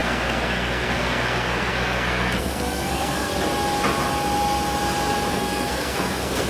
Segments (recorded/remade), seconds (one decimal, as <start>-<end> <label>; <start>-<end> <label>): 0.0-3.3 remade; 3.3-5.3 recorded; 5.3-6.5 remade